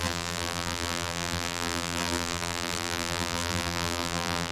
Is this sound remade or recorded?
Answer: remade